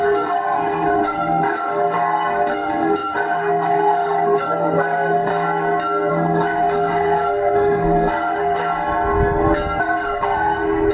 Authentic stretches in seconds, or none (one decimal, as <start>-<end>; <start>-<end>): 5.3-6.1; 8.6-9.8